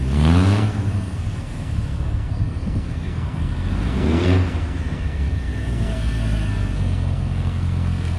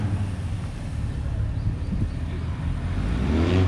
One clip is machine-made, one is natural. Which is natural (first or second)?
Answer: second